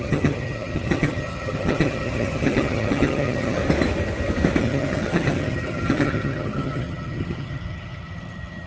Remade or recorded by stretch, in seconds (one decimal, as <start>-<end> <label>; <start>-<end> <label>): 0.0-3.6 remade; 3.6-4.6 recorded; 4.6-8.7 remade